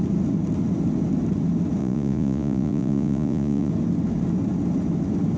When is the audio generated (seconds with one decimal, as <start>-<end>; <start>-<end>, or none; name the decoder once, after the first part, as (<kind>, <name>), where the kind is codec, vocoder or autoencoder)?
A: 1.8-3.7 (vocoder, Vocos)

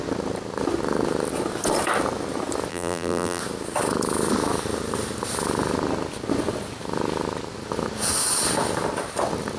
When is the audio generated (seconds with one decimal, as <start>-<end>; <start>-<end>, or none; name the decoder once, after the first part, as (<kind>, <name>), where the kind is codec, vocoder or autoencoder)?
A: 2.7-3.4 (vocoder, BigVGAN v2)

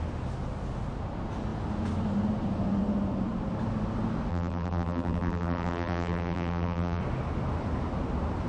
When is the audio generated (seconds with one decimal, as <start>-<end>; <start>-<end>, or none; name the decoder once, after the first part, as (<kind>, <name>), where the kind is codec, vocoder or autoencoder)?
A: 4.3-7.0 (vocoder, BigVGAN v2)

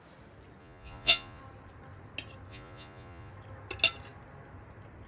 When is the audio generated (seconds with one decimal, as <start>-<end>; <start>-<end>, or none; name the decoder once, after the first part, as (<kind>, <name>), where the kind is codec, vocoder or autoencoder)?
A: 0.6-1.4 (vocoder, Vocos); 2.5-3.3

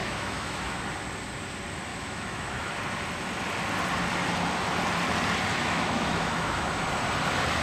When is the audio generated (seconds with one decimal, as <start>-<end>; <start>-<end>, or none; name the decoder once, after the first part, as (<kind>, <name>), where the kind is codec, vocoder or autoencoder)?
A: 0.0-0.8 (autoencoder, DAC-VAE); 1.9-2.8; 5.5-6.7

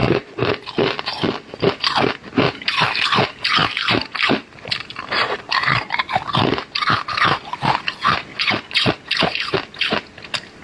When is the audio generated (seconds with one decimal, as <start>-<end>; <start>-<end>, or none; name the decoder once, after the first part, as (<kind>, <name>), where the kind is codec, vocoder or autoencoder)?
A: 0.0-0.5 (vocoder, Vocos); 8.3-8.9

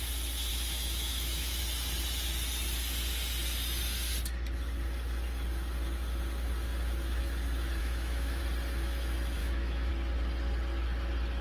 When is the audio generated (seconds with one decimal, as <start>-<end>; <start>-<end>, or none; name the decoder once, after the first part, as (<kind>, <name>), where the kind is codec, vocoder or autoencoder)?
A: 0.5-1.6 (autoencoder, DAC-VAE); 7.8-8.4; 9.4-9.9

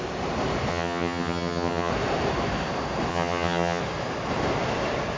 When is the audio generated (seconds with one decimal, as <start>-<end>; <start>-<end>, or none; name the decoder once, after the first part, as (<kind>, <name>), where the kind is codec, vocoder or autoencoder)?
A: 0.7-1.9 (vocoder, HiFi-GAN); 3.1-3.8